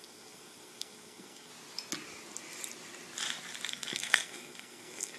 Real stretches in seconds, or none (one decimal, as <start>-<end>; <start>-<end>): 1.5-3.7